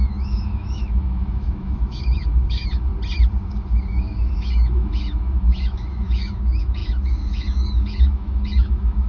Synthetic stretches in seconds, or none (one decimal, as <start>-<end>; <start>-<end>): 0.0-2.9; 3.7-9.1

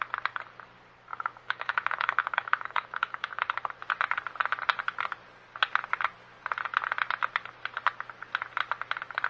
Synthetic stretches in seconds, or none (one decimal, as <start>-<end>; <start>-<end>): 1.1-3.4

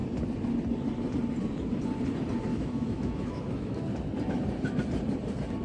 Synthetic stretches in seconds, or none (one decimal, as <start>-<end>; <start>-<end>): 2.5-3.8

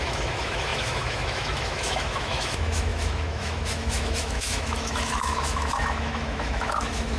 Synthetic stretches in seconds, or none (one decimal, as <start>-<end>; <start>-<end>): 0.0-7.2